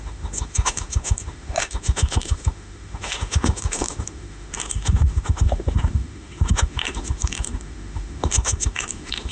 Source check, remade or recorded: remade